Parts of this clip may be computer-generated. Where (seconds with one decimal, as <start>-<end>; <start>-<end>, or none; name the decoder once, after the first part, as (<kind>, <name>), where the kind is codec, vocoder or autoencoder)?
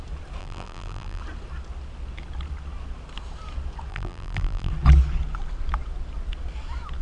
0.4-1.2 (vocoder, BigVGAN v2); 3.9-4.7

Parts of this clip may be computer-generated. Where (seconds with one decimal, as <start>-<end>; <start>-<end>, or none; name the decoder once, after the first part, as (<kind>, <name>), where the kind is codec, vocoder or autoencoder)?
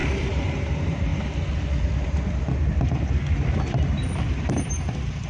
0.0-1.1 (vocoder, BigVGAN v2); 4.3-5.3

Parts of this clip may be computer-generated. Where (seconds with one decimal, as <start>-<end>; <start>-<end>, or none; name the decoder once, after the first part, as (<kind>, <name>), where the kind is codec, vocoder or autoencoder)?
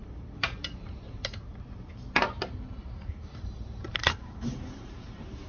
0.0-1.9 (vocoder, BigVGAN v2); 2.8-5.5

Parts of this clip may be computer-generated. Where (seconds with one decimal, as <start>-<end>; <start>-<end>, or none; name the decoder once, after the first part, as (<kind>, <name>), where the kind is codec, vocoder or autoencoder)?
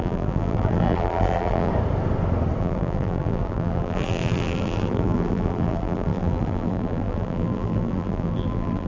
0.0-1.7 (vocoder, BigVGAN v2); 2.6-8.9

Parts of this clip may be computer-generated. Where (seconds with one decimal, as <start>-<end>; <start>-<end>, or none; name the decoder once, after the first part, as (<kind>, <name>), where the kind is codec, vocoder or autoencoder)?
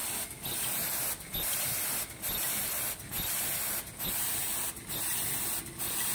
none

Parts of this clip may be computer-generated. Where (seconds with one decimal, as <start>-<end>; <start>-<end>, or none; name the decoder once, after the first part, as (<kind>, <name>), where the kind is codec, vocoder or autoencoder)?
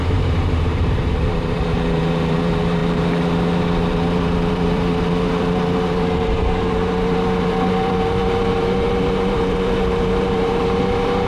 0.0-11.3 (vocoder, BigVGAN v2)